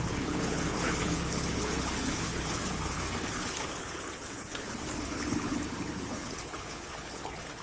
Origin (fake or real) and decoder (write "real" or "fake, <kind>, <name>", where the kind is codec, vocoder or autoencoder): fake, codec, HILCodec